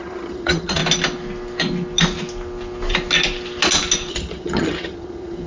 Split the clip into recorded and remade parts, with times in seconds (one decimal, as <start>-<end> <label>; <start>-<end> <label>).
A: 0.0-0.8 remade; 0.8-4.1 recorded; 4.1-5.5 remade